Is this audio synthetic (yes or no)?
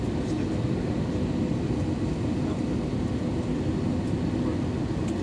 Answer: no